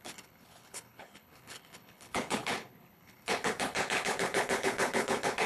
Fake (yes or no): yes